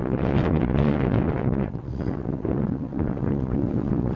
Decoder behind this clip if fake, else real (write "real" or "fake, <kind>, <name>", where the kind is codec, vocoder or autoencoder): fake, vocoder, WaveNeXt